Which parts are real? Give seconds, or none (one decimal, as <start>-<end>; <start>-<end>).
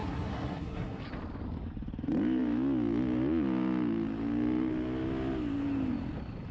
1.0-6.5